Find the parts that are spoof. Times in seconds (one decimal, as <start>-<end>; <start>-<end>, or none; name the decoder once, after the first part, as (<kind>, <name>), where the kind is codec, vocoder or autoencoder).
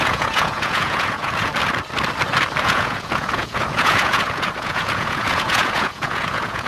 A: 0.0-1.5 (vocoder, Vocos); 2.6-6.7